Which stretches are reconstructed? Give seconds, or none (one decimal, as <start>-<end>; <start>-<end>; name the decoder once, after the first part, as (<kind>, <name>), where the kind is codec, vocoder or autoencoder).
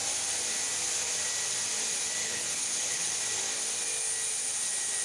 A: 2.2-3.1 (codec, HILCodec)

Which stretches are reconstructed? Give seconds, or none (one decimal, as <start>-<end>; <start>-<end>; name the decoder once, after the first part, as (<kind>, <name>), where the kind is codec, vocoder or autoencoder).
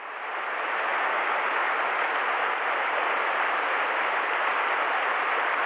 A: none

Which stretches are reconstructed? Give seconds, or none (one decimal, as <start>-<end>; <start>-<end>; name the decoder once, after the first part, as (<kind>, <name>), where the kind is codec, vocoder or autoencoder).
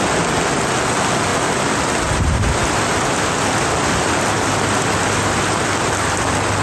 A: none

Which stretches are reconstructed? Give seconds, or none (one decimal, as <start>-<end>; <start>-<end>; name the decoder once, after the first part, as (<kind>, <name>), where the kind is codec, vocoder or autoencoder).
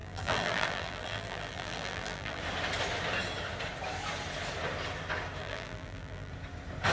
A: 0.0-2.4 (vocoder, BigVGAN v2); 5.4-6.3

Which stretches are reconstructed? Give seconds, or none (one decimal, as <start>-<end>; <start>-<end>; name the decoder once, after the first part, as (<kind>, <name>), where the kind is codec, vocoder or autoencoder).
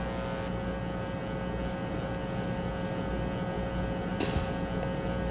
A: none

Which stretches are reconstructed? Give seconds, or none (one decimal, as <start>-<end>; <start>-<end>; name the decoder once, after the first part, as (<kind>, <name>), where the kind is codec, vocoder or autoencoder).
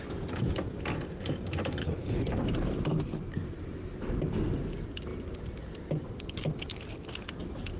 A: 1.8-2.4 (codec, HILCodec)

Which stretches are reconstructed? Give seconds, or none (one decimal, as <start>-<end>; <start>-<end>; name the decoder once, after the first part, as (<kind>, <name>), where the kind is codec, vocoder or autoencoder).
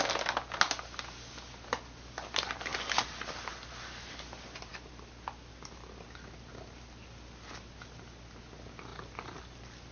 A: none